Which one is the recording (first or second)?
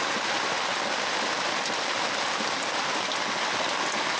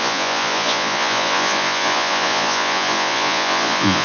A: first